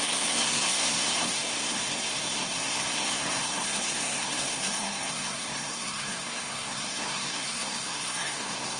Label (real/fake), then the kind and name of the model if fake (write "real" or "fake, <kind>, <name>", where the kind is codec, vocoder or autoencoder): fake, codec, SNAC